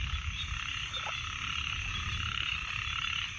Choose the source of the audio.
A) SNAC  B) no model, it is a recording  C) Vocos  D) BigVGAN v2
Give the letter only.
B